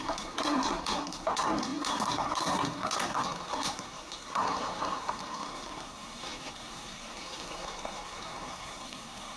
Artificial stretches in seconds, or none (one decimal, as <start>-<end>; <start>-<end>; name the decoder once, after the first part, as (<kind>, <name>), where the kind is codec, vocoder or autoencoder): 0.0-9.4 (codec, SNAC)